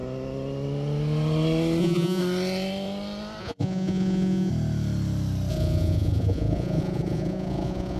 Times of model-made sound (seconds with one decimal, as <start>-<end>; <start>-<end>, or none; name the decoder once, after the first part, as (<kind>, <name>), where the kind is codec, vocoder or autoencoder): 1.8-2.2 (vocoder, Vocos); 3.4-4.5; 5.5-8.0